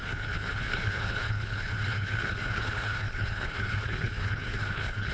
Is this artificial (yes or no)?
yes